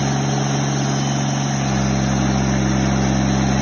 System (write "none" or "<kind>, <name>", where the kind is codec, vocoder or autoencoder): none